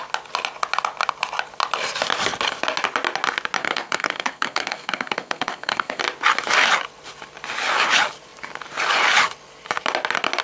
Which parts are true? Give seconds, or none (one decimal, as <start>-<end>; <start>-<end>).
0.0-3.6; 6.0-10.4